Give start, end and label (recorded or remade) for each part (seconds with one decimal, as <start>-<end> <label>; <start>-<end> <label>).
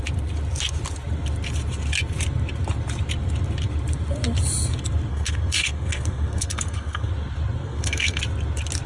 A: 0.0-5.1 recorded; 5.1-7.1 remade; 7.1-7.6 recorded; 7.6-8.2 remade; 8.2-8.9 recorded